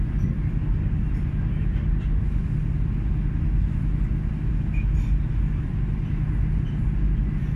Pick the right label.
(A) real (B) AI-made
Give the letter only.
A